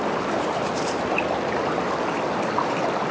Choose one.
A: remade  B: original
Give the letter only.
B